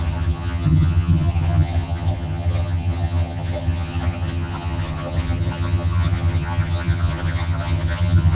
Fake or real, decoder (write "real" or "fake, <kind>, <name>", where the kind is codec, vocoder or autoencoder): fake, vocoder, HiFi-GAN